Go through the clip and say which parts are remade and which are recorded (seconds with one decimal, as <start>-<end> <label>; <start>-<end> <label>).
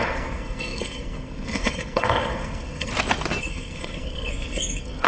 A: 0.0-2.9 remade; 2.9-3.4 recorded; 3.4-5.1 remade